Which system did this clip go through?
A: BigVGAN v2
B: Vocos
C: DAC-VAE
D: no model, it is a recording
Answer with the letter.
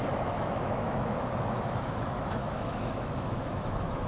C